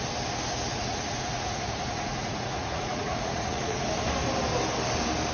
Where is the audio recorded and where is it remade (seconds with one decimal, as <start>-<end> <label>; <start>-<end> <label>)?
0.0-0.7 recorded; 0.7-3.9 remade; 3.9-5.3 recorded